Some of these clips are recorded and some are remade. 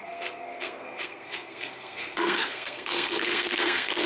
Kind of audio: remade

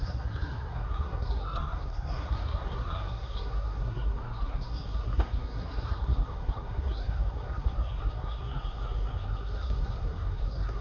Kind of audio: remade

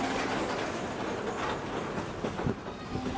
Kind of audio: recorded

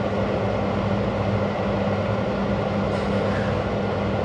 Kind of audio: recorded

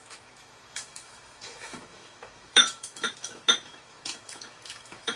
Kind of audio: remade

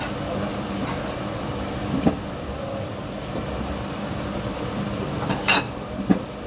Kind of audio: remade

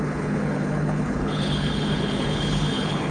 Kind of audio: remade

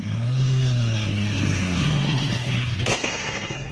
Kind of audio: remade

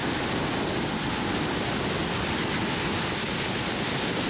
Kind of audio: recorded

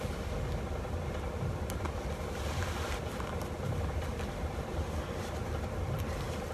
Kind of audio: recorded